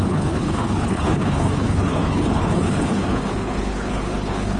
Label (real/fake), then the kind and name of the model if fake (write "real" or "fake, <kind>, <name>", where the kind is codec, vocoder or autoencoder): fake, codec, HILCodec